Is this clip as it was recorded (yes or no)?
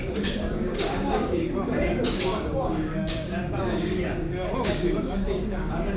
no